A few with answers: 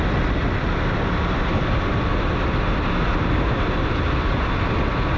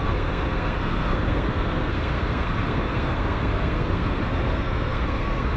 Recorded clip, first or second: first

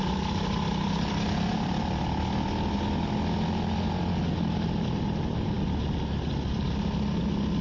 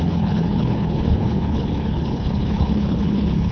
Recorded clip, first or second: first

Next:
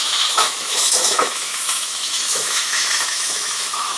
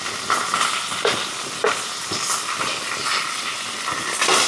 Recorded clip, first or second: second